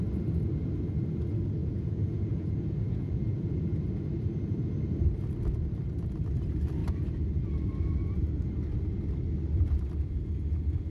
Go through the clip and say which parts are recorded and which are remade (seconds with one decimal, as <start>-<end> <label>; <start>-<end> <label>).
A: 0.0-1.6 recorded; 1.6-3.6 remade; 3.6-10.9 recorded

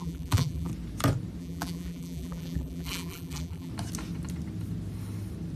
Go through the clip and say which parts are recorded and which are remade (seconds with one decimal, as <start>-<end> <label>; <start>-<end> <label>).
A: 0.0-0.7 remade; 0.7-1.4 recorded; 1.4-3.7 remade; 3.7-5.6 recorded

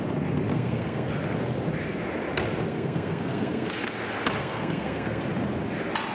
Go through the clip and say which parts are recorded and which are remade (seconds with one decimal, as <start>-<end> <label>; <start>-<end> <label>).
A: 0.0-0.5 recorded; 0.5-1.1 remade; 1.1-2.7 recorded; 2.7-3.7 remade; 3.7-4.4 recorded; 4.4-5.2 remade; 5.2-6.1 recorded

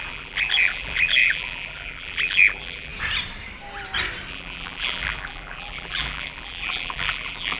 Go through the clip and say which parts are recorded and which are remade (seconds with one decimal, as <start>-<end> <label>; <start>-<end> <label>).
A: 0.0-2.9 remade; 2.9-4.3 recorded; 4.3-7.6 remade

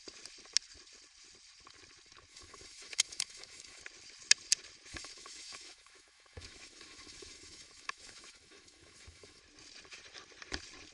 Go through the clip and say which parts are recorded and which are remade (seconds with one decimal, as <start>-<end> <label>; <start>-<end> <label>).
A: 0.0-2.3 recorded; 2.3-3.8 remade; 3.8-4.9 recorded; 4.9-9.4 remade; 9.4-10.9 recorded

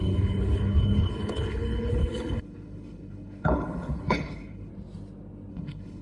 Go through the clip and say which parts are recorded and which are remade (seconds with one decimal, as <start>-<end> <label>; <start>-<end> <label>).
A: 0.0-4.7 remade; 4.7-5.5 recorded; 5.5-6.0 remade

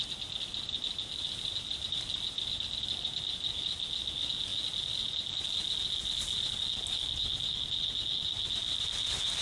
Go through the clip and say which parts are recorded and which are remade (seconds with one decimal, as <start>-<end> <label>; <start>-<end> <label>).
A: 0.0-9.4 recorded